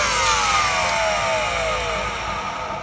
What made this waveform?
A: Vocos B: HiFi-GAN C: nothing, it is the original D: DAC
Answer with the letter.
C